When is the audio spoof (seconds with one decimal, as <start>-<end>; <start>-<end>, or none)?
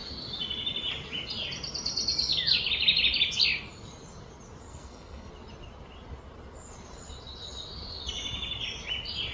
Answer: 4.7-5.3